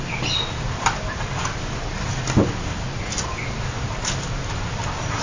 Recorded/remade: recorded